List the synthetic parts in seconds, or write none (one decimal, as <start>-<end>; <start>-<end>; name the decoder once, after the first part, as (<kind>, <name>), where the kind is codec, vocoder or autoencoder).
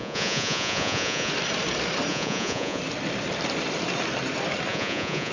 0.0-1.3 (vocoder, Vocos); 2.1-2.8; 4.7-5.3